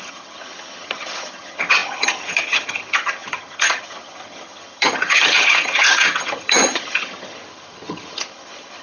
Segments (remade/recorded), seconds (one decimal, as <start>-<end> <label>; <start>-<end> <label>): 0.0-8.8 remade